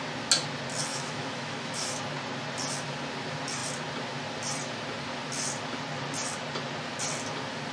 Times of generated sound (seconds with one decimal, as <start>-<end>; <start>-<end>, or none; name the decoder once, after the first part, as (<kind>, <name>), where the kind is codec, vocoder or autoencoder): 0.9-2.0 (autoencoder, DAC-VAE)

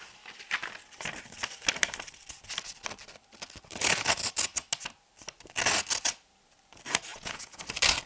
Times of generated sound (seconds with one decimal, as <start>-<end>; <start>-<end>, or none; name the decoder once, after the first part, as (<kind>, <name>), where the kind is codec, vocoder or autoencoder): 7.1-7.6 (vocoder, Vocos)

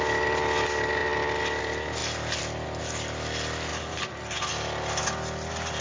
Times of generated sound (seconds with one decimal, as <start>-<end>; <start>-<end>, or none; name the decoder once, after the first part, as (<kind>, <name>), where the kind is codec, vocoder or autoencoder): none

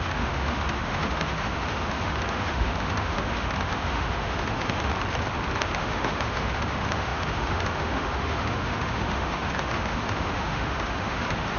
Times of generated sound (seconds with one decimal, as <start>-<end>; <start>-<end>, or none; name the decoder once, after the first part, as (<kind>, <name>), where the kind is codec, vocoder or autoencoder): 0.0-4.9 (autoencoder, DAC-VAE); 5.6-11.6

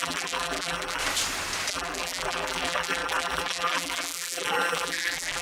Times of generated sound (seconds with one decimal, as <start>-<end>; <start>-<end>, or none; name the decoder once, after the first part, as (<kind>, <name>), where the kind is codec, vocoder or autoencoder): 0.0-1.0 (vocoder, BigVGAN v2); 1.7-5.4

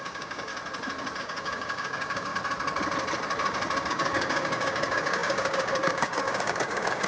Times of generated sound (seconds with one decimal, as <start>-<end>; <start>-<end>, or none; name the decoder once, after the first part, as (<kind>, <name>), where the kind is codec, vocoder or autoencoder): 0.0-0.5 (codec, DAC); 1.2-2.3; 3.9-7.1